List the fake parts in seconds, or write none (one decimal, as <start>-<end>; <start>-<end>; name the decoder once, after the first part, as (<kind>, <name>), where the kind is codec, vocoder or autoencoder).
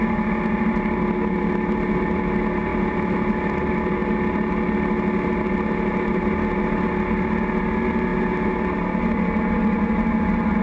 none